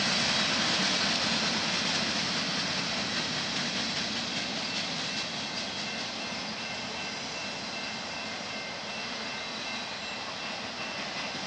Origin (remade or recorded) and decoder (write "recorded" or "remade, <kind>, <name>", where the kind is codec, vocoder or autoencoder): recorded